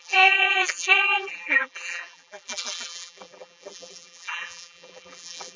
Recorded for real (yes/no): no